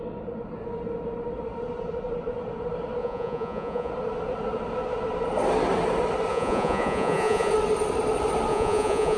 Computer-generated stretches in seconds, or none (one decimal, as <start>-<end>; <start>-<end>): 3.0-3.9; 6.3-7.5; 8.5-9.2